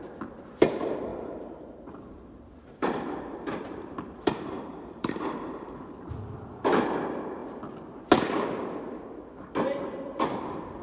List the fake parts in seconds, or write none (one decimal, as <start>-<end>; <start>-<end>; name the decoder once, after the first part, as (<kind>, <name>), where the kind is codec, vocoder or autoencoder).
1.1-6.1 (vocoder, BigVGAN v2)